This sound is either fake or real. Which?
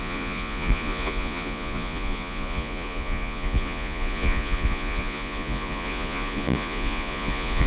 fake